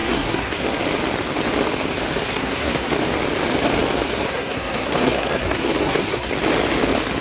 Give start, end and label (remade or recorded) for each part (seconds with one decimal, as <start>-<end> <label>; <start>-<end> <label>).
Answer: 0.0-0.8 remade; 0.8-2.3 recorded; 2.3-3.0 remade; 3.0-4.1 recorded; 4.1-6.3 remade; 6.3-7.2 recorded